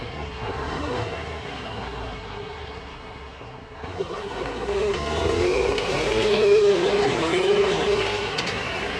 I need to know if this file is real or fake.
fake